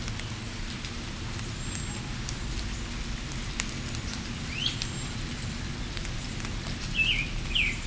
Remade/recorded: recorded